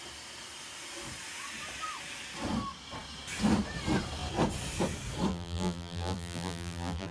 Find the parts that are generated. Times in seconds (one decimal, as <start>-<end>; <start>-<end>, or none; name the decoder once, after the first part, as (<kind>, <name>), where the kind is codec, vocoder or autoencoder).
5.3-7.1 (vocoder, BigVGAN v2)